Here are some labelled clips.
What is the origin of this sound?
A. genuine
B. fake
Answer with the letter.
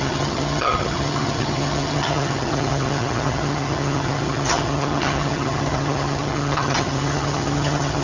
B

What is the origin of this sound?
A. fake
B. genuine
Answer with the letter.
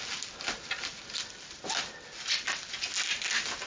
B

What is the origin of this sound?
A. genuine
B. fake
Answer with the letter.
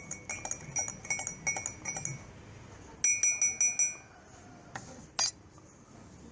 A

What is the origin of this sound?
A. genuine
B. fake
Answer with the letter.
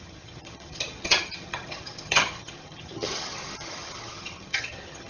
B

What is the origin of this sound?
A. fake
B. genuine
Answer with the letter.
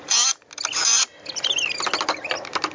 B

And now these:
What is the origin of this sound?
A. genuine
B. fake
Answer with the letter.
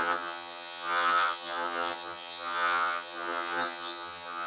B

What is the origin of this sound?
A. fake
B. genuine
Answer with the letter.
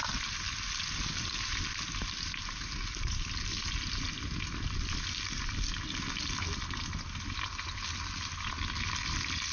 B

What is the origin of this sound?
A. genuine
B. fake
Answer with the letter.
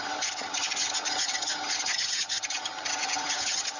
B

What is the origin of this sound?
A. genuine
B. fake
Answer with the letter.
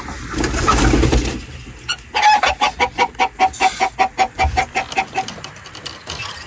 A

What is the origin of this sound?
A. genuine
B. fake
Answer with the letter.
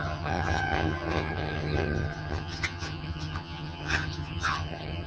B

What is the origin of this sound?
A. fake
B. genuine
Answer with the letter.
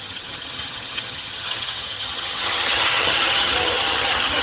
A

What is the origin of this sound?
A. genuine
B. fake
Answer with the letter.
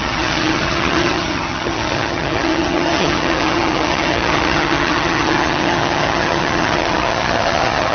B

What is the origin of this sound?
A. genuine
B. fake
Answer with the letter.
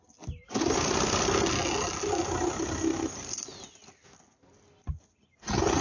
A